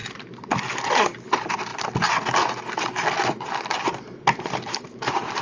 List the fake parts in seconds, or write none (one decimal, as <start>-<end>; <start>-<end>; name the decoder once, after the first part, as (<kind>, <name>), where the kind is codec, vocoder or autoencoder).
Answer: 0.0-1.7 (vocoder, BigVGAN v2); 4.5-5.4